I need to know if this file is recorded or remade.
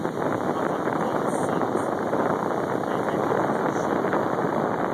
recorded